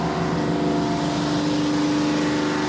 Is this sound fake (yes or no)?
no